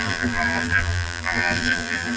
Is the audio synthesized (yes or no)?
yes